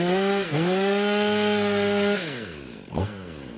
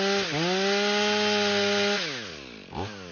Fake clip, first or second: first